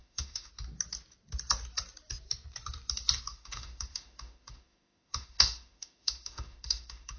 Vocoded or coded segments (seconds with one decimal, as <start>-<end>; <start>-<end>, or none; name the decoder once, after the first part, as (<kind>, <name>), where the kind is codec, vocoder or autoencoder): 0.0-0.5 (autoencoder, DAC-VAE); 3.3-7.2